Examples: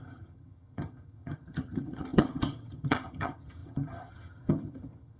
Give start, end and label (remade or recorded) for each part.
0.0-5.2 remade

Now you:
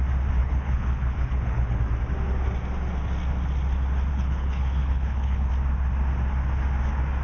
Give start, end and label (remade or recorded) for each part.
0.0-0.4 recorded; 0.4-1.8 remade; 1.8-4.1 recorded; 4.1-5.5 remade; 5.5-7.2 recorded

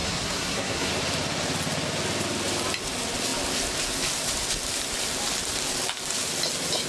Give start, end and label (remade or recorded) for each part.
0.0-0.9 remade; 0.9-6.9 recorded

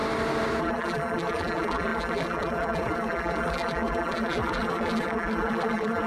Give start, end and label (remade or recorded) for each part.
0.0-0.6 recorded; 0.6-6.1 remade

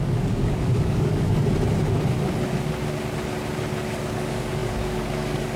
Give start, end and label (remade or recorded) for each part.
0.0-1.4 remade; 1.4-3.9 recorded; 3.9-5.6 remade

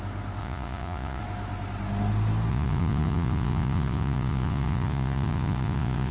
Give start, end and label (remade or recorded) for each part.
0.0-0.4 recorded; 0.4-1.2 remade; 1.2-2.5 recorded; 2.5-6.1 remade

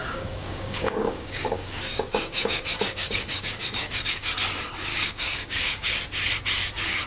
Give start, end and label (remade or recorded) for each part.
0.0-4.3 remade; 4.3-4.9 recorded; 4.9-6.0 remade; 6.0-7.1 recorded

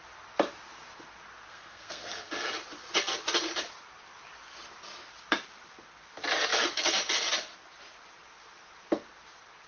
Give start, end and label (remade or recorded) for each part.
0.0-1.5 recorded; 1.5-2.3 remade; 2.3-9.7 recorded